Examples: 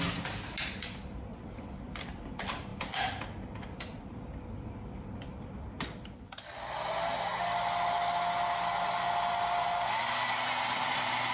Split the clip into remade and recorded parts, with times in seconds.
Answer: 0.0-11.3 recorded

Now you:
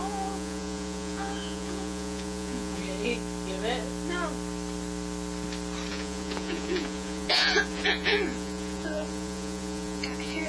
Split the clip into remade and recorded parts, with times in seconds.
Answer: 0.0-2.8 remade; 2.8-5.9 recorded; 5.9-10.5 remade

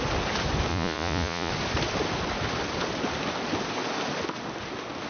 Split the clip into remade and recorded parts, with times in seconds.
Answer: 0.0-0.7 recorded; 0.7-1.5 remade; 1.5-5.1 recorded

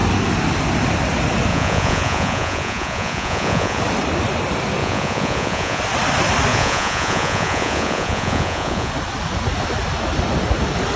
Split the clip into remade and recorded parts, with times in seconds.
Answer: 0.0-1.5 recorded; 1.5-3.8 remade; 3.8-4.8 recorded; 4.8-5.8 remade; 5.8-6.5 recorded; 6.5-8.9 remade; 8.9-11.0 recorded

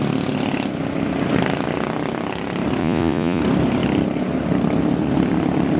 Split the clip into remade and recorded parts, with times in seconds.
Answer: 0.0-2.8 recorded; 2.8-3.4 remade; 3.4-5.8 recorded